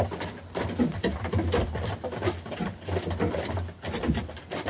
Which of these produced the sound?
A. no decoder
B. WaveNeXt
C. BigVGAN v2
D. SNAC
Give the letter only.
A